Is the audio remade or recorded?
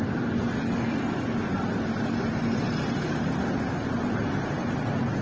recorded